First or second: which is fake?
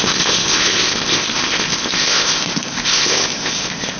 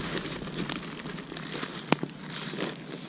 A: first